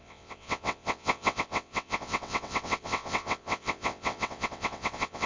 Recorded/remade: remade